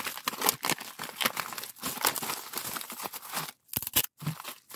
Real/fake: real